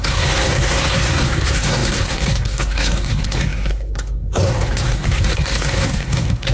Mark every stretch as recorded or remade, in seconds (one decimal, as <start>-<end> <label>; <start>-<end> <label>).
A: 0.0-6.5 remade